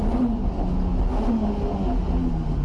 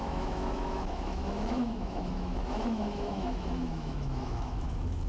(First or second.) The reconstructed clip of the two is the second